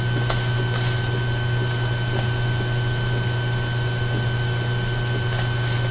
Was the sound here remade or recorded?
recorded